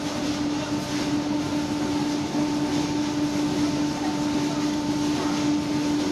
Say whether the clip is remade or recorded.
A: recorded